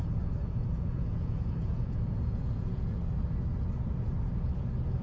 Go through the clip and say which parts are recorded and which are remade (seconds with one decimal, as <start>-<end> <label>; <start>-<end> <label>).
0.0-3.0 remade; 3.0-5.0 recorded

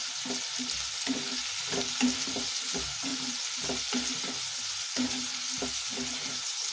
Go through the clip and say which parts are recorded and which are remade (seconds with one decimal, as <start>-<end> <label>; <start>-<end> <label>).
0.0-3.1 recorded; 3.1-3.9 remade; 3.9-6.7 recorded

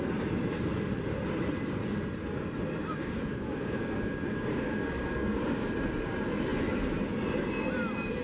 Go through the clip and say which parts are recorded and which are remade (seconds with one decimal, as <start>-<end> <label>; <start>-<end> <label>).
0.0-2.8 recorded; 2.8-5.7 remade; 5.7-8.2 recorded

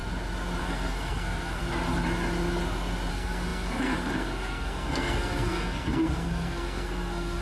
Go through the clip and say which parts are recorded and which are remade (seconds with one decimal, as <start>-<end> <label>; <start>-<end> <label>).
0.0-0.6 recorded; 0.6-1.6 remade; 1.6-3.1 recorded; 3.1-7.4 remade

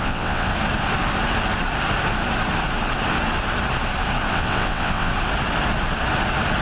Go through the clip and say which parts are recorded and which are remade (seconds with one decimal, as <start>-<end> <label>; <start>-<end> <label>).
0.0-0.5 remade; 0.5-4.3 recorded; 4.3-5.1 remade; 5.1-6.6 recorded

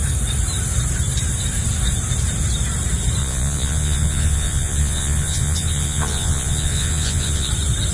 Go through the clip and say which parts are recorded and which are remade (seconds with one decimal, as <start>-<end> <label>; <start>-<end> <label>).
0.0-3.2 recorded; 3.2-7.5 remade; 7.5-7.9 recorded

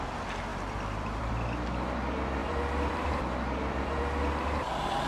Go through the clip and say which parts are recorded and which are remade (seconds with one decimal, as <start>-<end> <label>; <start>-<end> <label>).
0.0-0.5 recorded; 0.5-1.3 remade; 1.3-2.4 recorded; 2.4-5.1 remade